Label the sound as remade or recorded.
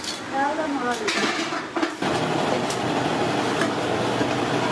recorded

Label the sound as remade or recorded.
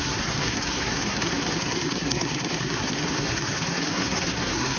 remade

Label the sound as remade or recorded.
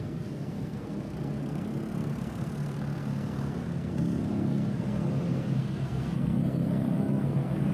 remade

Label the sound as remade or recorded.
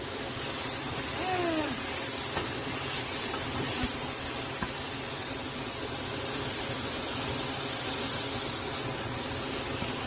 recorded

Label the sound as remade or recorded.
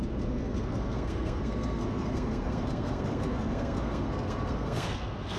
remade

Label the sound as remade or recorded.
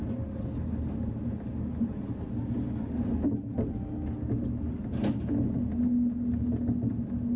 recorded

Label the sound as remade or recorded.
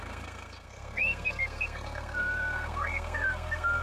remade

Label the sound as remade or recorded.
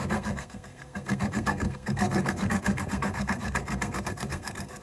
remade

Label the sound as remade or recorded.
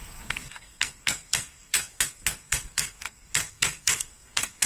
remade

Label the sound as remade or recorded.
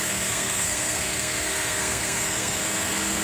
remade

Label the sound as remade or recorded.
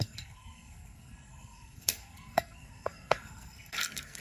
remade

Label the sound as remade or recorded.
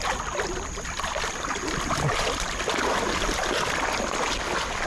recorded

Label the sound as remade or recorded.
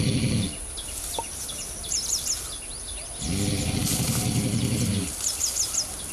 recorded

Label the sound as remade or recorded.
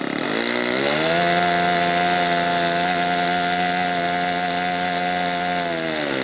recorded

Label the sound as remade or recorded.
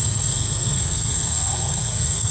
remade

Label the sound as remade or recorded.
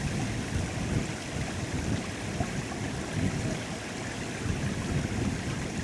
recorded